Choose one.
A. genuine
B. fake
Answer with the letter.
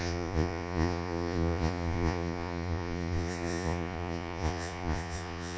B